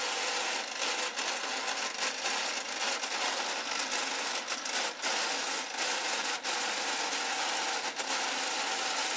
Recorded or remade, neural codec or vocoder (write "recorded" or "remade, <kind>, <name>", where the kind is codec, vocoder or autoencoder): recorded